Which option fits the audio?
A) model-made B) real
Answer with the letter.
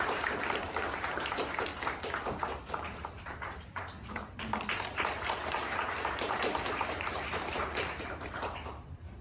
A